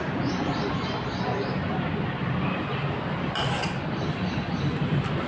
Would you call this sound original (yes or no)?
no